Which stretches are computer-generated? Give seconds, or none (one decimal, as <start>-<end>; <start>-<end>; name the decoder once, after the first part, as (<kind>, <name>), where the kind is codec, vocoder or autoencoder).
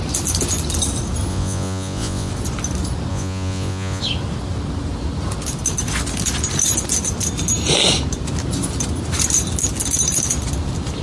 1.3-2.3 (vocoder, Vocos); 3.1-4.0